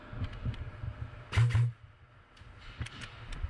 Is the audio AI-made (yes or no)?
no